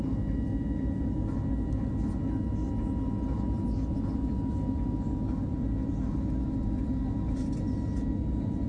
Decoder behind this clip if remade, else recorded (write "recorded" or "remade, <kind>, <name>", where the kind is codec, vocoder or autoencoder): recorded